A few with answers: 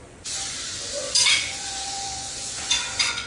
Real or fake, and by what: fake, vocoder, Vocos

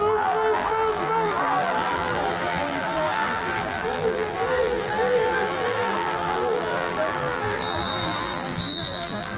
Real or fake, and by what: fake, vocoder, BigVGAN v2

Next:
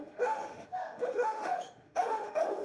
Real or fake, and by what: fake, autoencoder, DAC-VAE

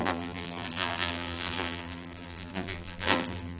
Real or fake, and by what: fake, vocoder, BigVGAN v2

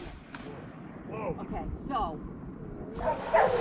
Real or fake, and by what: real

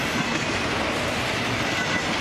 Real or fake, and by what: real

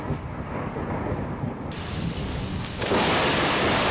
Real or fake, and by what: real